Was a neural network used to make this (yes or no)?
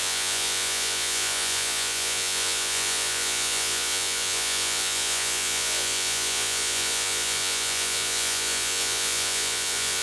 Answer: yes